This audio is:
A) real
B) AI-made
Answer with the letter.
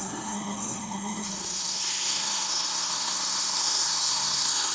B